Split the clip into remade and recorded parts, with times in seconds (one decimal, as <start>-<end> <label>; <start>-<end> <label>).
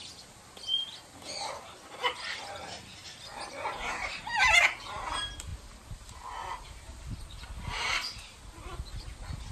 0.0-9.5 recorded